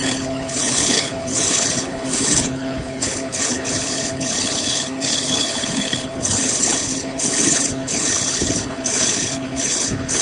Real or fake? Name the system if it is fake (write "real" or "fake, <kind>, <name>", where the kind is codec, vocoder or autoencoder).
fake, codec, HILCodec